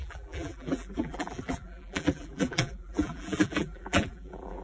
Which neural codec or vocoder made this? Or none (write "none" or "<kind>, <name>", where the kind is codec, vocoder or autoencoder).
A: vocoder, BigVGAN v2